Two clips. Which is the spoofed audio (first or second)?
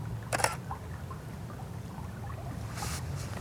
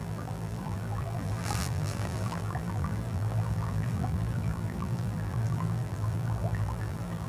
second